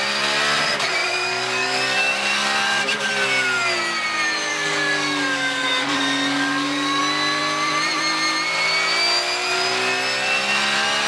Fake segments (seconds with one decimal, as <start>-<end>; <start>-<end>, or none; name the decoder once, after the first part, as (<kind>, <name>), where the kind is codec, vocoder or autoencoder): 1.0-3.1 (codec, DAC); 4.5-7.0